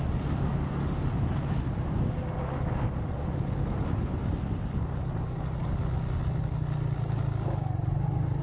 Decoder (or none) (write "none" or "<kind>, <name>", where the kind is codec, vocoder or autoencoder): none